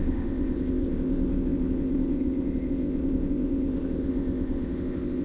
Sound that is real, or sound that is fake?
fake